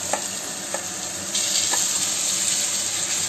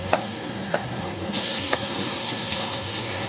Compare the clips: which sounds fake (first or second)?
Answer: second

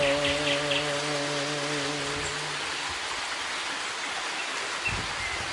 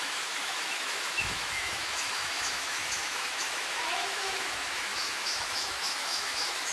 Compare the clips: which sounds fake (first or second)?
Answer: second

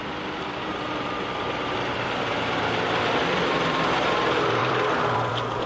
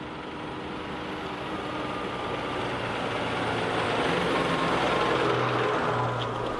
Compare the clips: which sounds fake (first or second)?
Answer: first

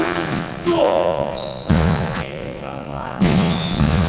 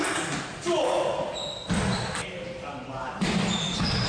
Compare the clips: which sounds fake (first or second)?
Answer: first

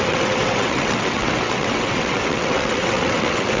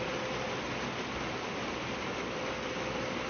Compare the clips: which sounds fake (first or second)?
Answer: first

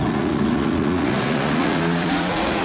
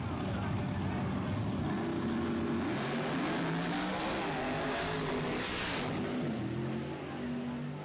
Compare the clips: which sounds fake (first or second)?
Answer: first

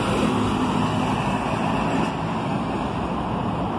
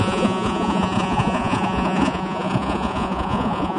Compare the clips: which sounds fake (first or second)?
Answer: second